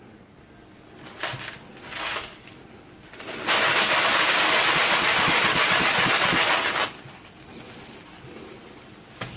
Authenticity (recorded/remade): recorded